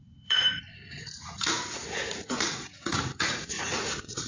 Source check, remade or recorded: remade